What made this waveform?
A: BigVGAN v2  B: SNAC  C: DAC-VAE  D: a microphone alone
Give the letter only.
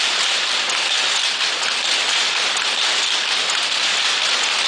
D